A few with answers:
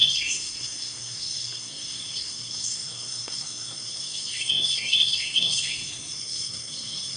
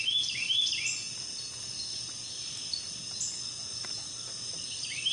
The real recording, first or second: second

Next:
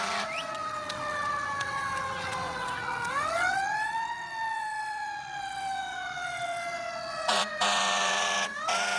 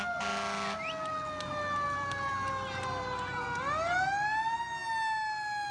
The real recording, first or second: second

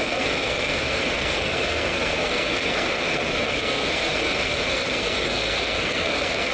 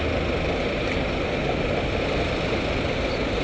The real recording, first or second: second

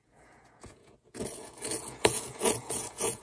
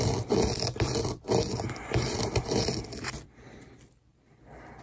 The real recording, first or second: second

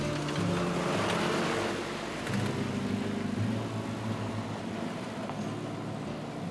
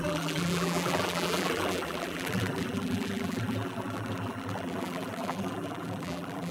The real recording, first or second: first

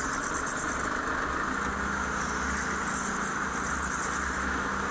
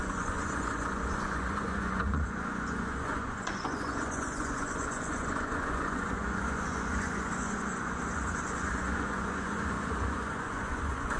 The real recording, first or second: first